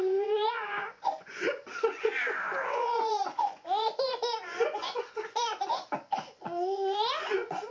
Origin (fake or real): fake